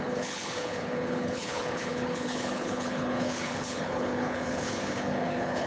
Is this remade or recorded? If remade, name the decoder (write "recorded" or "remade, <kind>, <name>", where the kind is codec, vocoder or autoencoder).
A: remade, codec, HILCodec